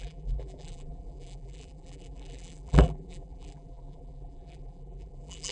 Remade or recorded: remade